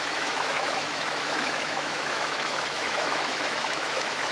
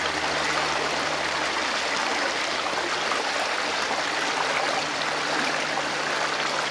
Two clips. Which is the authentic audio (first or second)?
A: second